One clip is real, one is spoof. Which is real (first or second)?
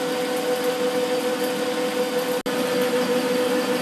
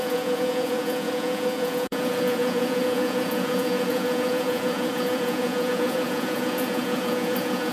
first